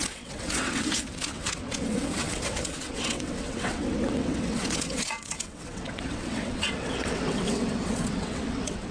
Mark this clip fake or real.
fake